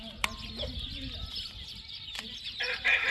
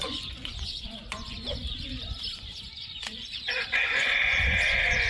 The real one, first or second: first